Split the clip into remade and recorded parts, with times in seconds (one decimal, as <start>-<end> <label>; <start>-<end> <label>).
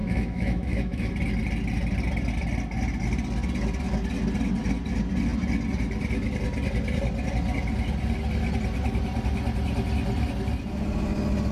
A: 0.0-1.1 remade; 1.1-11.5 recorded